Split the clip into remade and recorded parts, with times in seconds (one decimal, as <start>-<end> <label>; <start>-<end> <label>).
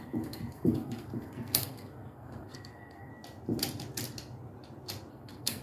0.0-3.1 remade; 3.1-5.1 recorded; 5.1-5.6 remade